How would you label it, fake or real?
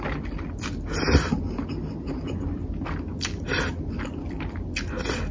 real